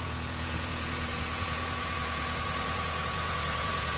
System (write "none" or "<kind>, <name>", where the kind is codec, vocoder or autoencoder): vocoder, Vocos